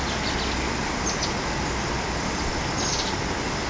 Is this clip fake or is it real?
real